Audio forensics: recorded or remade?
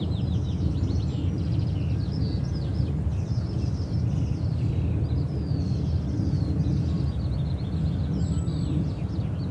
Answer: recorded